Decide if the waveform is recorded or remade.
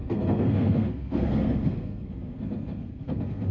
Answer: remade